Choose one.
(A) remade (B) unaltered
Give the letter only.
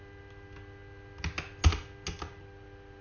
B